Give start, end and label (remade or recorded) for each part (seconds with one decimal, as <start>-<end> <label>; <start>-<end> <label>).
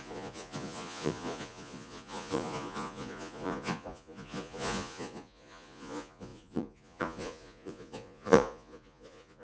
0.0-9.4 remade